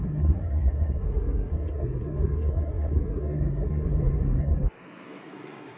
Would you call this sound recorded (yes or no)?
no